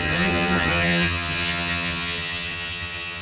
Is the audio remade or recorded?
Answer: remade